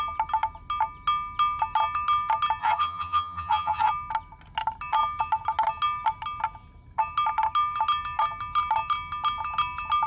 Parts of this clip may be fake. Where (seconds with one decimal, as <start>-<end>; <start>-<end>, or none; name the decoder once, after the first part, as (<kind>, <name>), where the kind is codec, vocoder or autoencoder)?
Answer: 2.6-3.9 (vocoder, HiFi-GAN)